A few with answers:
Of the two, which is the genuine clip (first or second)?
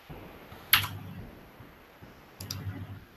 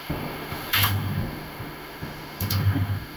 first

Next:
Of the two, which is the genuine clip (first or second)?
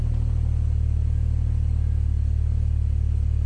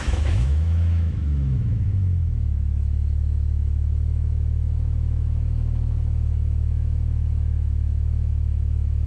first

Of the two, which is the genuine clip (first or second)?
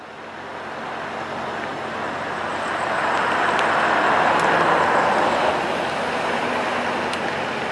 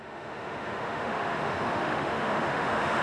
first